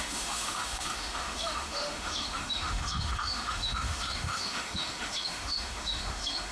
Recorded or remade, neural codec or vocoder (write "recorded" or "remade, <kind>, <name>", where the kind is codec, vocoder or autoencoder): remade, autoencoder, DAC-VAE